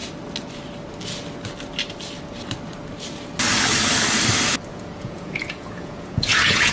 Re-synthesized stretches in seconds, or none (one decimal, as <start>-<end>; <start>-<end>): 4.7-6.7